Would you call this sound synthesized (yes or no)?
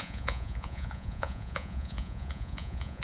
yes